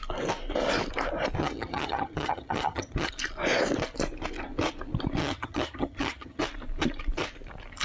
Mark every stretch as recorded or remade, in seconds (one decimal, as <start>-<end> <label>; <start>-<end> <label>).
0.0-1.4 recorded; 1.4-3.1 remade; 3.1-5.2 recorded; 5.2-6.4 remade; 6.4-7.8 recorded